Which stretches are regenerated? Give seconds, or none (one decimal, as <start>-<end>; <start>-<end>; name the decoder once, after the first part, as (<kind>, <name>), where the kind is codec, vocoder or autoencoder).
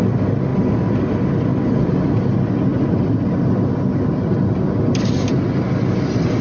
2.7-5.3 (vocoder, BigVGAN v2)